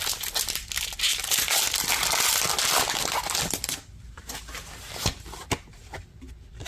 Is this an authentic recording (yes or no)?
yes